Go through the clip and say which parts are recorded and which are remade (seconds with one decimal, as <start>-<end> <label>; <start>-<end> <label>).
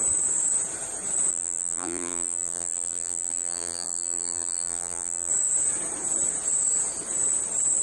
0.0-1.3 recorded; 1.3-5.3 remade; 5.3-7.8 recorded